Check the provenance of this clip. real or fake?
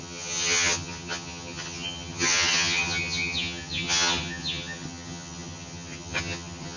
fake